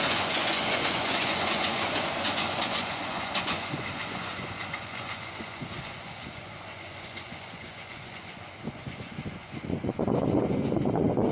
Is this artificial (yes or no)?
yes